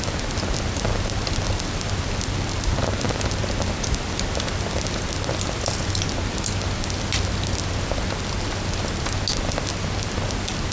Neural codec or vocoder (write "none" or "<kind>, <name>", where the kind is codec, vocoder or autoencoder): none